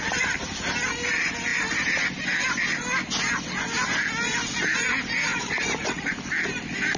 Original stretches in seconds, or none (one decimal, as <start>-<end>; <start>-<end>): 0.0-5.3; 6.1-7.0